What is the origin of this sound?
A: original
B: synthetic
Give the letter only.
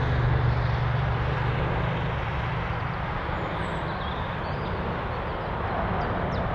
A